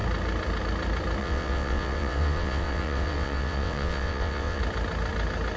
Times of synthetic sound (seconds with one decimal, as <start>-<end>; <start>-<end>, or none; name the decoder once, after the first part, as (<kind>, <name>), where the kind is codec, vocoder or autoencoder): 1.2-4.6 (vocoder, WaveNeXt)